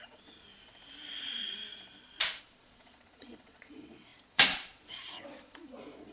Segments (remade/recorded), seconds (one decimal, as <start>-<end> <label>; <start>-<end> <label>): 0.0-0.5 remade; 0.5-1.1 recorded; 1.1-1.6 remade; 1.6-2.4 recorded; 2.4-6.1 remade